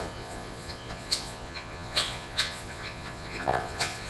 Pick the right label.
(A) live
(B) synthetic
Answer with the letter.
B